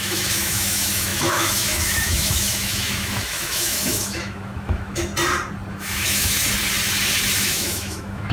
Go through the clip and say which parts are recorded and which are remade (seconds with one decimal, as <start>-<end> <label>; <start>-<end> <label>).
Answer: 0.0-5.1 remade; 5.1-5.7 recorded; 5.7-6.4 remade; 6.4-7.4 recorded; 7.4-8.3 remade

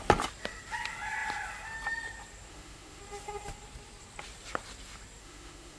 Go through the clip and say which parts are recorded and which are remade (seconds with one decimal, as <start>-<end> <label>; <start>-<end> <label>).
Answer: 0.0-2.5 recorded; 2.5-3.0 remade; 3.0-5.2 recorded; 5.2-5.8 remade

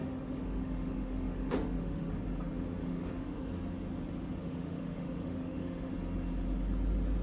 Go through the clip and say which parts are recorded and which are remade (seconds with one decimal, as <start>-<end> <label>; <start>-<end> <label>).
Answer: 0.0-2.1 remade; 2.1-2.8 recorded; 2.8-3.5 remade; 3.5-4.4 recorded; 4.4-5.9 remade; 5.9-7.2 recorded

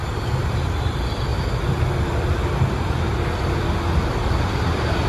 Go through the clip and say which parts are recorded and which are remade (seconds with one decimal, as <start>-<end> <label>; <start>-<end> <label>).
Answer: 0.0-5.1 recorded

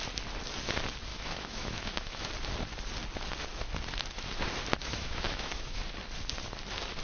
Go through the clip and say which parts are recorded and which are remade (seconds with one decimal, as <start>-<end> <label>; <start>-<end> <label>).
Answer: 0.0-1.1 recorded; 1.1-2.3 remade; 2.3-4.8 recorded; 4.8-5.8 remade; 5.8-7.0 recorded

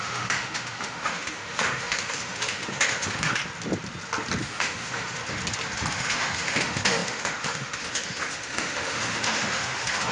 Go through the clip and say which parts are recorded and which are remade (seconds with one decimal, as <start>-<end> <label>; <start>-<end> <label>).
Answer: 0.0-3.4 remade; 3.4-4.4 recorded; 4.4-5.2 remade; 5.2-5.9 recorded; 5.9-10.1 remade

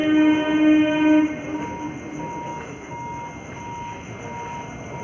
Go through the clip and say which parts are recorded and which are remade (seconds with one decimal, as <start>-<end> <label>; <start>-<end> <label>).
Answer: 0.0-2.5 recorded; 2.5-3.5 remade; 3.5-5.0 recorded